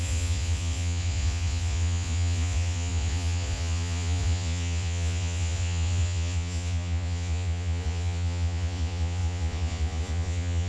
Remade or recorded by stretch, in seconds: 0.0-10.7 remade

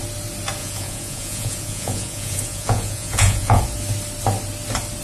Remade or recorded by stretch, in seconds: 0.0-0.6 recorded; 0.6-3.6 remade; 3.6-5.0 recorded

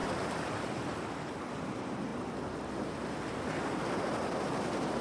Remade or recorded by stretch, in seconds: 0.0-5.0 recorded

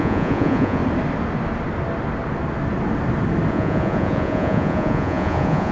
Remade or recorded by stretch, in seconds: 0.0-0.8 remade; 0.8-3.5 recorded; 3.5-5.7 remade

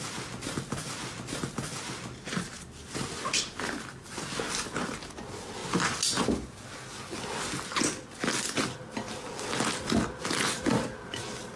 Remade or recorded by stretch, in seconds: 0.0-11.6 recorded

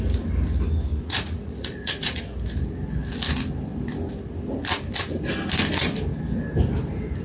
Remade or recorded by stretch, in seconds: 0.0-0.9 recorded; 0.9-2.2 remade; 2.2-7.2 recorded

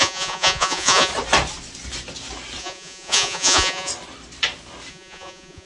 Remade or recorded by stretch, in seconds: 0.0-1.1 remade; 1.1-2.6 recorded; 2.6-3.9 remade; 3.9-4.9 recorded; 4.9-5.7 remade

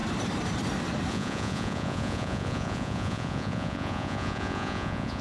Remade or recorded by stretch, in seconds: 0.0-1.1 recorded; 1.1-5.2 remade